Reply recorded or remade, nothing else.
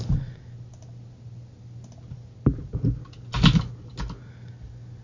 recorded